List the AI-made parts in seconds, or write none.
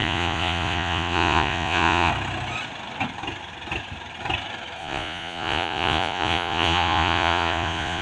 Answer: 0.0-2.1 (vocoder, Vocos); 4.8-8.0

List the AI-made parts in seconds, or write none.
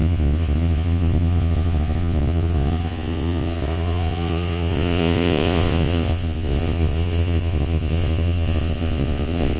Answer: 0.0-9.6 (vocoder, Vocos)